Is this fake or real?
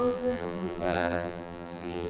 fake